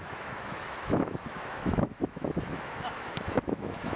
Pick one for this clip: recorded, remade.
remade